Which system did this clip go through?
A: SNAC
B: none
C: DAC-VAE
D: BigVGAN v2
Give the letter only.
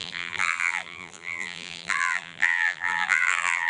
D